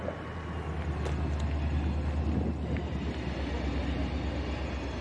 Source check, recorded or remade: recorded